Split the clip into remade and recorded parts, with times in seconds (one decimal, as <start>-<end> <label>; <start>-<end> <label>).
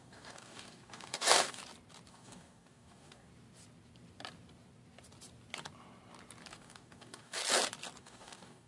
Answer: 0.0-1.6 remade; 1.6-2.1 recorded; 2.1-3.3 remade; 3.3-6.5 recorded; 6.5-7.4 remade; 7.4-8.0 recorded; 8.0-8.7 remade